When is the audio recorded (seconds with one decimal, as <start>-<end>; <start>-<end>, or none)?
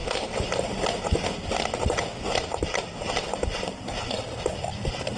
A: 0.0-5.2